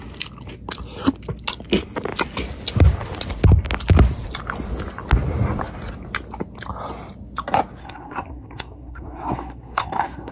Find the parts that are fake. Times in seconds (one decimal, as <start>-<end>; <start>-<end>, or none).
7.8-10.3